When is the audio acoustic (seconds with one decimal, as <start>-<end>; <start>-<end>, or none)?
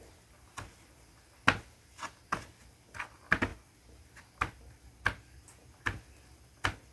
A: 0.0-6.9